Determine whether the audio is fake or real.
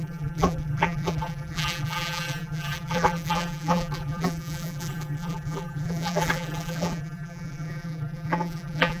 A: fake